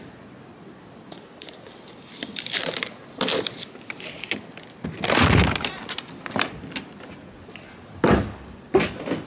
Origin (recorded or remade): recorded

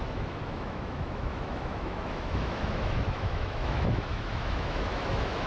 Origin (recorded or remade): remade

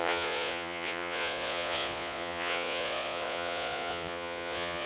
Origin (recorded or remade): remade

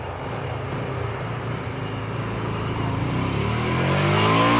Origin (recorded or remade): recorded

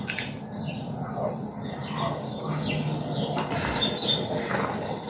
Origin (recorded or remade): recorded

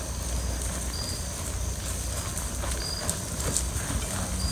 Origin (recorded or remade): recorded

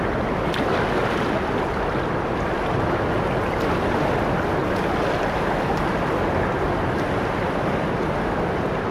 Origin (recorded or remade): recorded